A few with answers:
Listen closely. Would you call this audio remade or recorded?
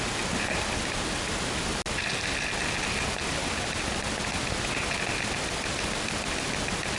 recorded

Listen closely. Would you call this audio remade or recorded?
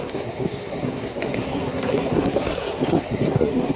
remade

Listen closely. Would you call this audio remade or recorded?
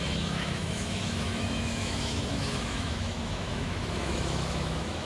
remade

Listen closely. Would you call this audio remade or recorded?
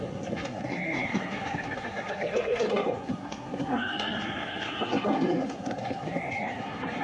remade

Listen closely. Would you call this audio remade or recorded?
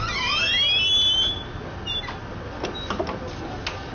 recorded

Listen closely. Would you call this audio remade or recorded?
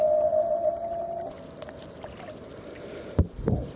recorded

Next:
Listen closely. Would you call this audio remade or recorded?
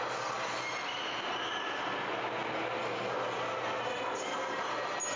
recorded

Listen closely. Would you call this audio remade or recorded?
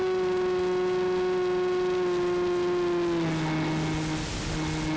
recorded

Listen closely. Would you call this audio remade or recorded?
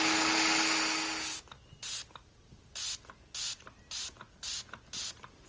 recorded